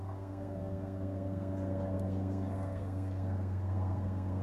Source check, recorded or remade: remade